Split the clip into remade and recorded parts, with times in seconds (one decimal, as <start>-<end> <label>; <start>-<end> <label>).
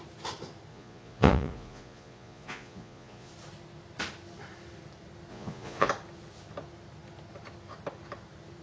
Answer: 0.0-0.7 recorded; 0.7-3.3 remade; 3.3-5.3 recorded; 5.3-5.9 remade; 5.9-8.6 recorded